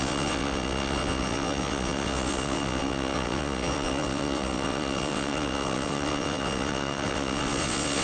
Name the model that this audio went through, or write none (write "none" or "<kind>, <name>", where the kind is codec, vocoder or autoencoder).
vocoder, WaveNeXt